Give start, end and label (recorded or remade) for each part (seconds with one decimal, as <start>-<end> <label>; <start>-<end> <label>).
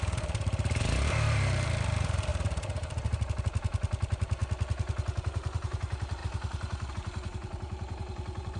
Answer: 0.0-4.4 remade; 4.4-5.2 recorded; 5.2-8.6 remade